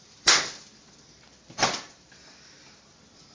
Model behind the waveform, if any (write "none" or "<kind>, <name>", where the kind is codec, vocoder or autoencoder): none